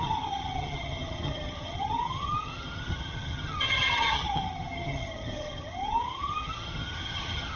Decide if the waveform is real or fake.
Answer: fake